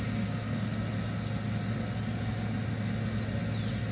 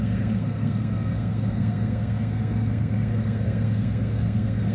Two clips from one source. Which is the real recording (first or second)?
first